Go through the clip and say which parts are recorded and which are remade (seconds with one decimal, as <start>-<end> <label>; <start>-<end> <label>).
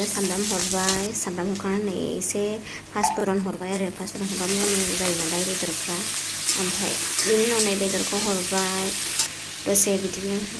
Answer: 0.0-3.2 recorded; 3.2-4.1 remade; 4.1-10.6 recorded